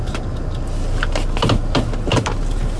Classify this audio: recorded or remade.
recorded